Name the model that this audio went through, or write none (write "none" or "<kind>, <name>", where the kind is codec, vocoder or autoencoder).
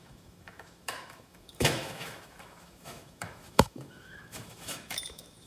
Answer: autoencoder, DAC-VAE